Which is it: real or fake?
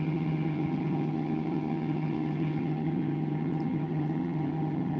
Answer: fake